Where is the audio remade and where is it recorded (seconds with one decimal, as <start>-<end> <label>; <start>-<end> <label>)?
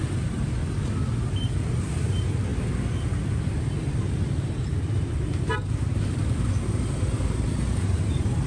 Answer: 0.0-0.6 remade; 0.6-1.8 recorded; 1.8-2.5 remade; 2.5-3.9 recorded; 3.9-8.5 remade